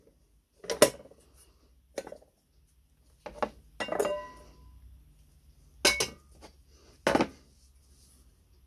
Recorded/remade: recorded